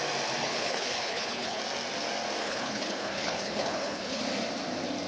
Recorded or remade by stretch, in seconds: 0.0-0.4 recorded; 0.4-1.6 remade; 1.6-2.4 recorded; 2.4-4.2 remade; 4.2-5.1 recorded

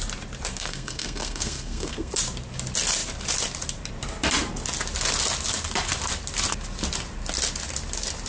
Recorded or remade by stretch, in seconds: 0.0-0.5 recorded; 0.5-2.1 remade; 2.1-8.3 recorded

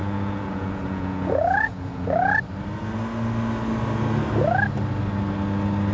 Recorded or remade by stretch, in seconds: 0.0-2.4 remade; 2.4-5.9 recorded

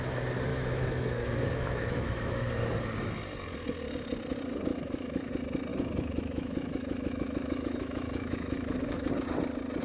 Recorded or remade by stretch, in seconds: 0.0-0.5 recorded; 0.5-2.5 remade; 2.5-4.7 recorded; 4.7-5.3 remade; 5.3-5.7 recorded; 5.7-9.1 remade; 9.1-9.8 recorded